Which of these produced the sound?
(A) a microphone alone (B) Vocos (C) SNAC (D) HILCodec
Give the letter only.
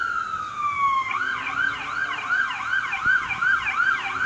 A